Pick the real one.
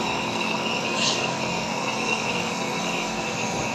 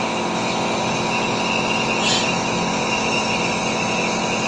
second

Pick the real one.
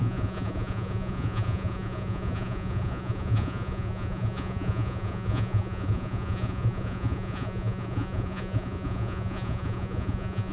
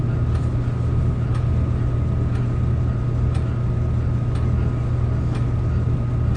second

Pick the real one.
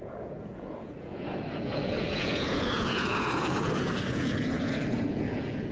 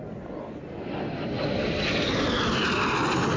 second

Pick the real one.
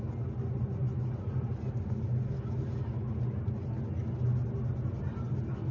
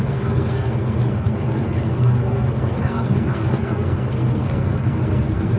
first